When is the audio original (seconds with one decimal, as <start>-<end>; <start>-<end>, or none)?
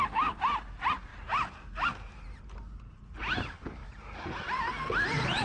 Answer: 0.0-5.4